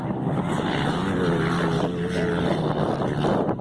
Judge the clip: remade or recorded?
recorded